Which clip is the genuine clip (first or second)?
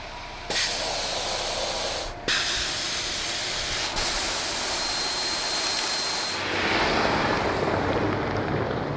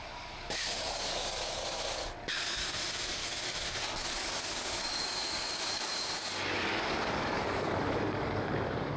first